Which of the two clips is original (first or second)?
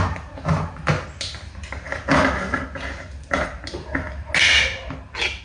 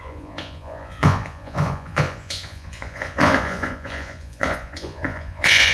first